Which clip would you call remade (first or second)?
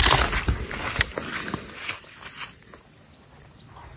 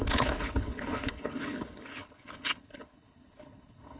second